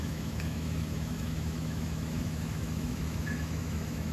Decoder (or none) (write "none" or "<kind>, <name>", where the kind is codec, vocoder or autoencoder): autoencoder, DAC-VAE